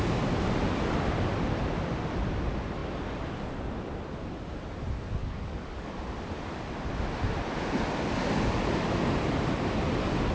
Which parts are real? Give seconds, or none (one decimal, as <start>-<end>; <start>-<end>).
0.0-5.2; 6.0-10.3